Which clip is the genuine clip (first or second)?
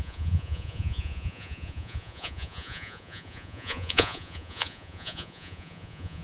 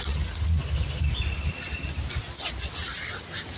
second